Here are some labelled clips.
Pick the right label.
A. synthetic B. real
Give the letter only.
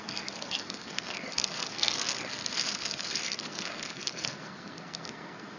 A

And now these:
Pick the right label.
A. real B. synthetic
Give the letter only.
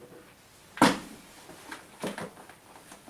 A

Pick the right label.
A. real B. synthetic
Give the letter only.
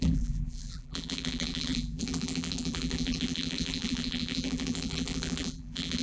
B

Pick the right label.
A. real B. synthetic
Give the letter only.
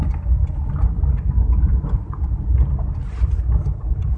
A